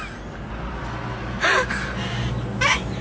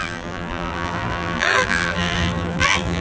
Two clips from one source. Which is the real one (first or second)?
first